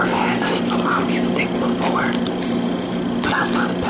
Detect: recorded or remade recorded